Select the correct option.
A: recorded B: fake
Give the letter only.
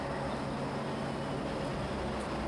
A